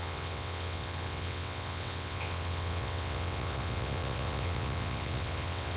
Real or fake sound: fake